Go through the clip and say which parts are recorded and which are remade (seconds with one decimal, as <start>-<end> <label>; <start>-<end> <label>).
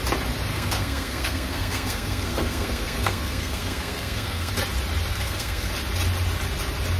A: 0.0-0.5 recorded; 0.5-4.5 remade; 4.5-5.1 recorded; 5.1-5.7 remade; 5.7-7.0 recorded